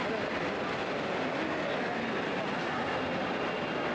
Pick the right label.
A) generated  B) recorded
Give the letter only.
B